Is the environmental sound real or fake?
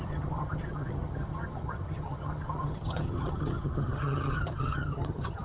fake